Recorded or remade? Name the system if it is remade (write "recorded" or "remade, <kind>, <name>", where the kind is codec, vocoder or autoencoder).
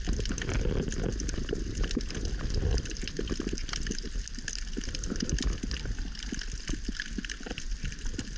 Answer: recorded